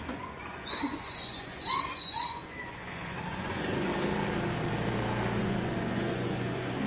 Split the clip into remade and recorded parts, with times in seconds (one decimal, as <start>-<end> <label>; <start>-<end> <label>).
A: 0.0-3.9 remade; 3.9-5.4 recorded; 5.4-6.9 remade